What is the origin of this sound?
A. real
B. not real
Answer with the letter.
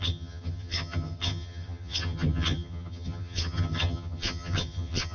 B